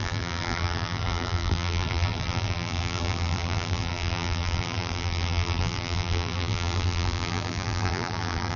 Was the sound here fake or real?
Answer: fake